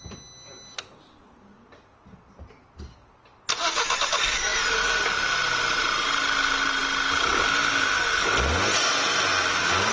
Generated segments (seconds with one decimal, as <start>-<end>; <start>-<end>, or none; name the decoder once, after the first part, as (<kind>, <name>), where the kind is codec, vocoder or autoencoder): none